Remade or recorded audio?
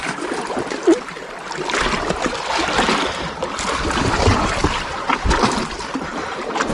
recorded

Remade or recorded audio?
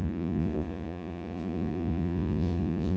remade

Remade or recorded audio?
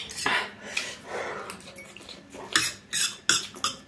recorded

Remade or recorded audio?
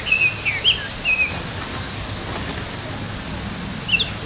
recorded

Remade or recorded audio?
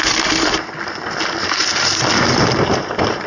recorded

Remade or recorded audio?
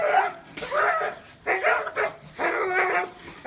recorded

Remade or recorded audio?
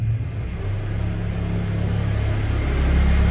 recorded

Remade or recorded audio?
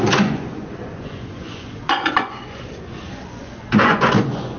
remade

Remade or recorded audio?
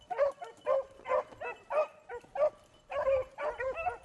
recorded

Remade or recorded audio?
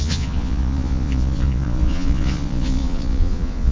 remade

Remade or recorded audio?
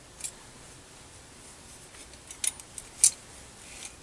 recorded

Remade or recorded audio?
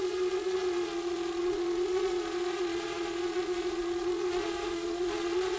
remade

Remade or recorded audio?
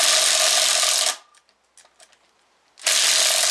recorded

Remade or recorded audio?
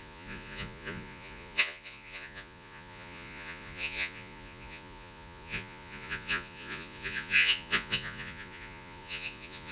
remade